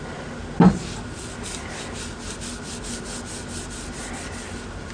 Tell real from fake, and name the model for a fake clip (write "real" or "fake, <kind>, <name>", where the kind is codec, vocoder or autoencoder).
real